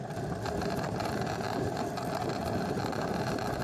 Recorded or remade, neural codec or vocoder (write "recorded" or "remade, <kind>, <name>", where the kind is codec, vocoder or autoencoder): recorded